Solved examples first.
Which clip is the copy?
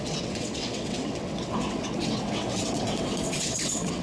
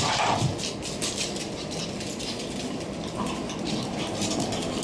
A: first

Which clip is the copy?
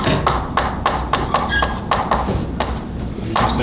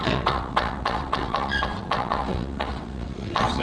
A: second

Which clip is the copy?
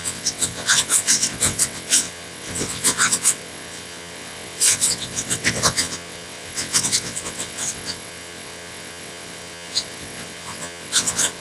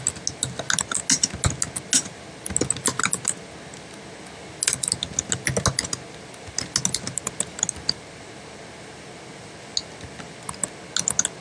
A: first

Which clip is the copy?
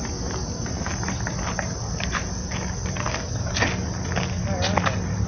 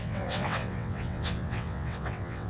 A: second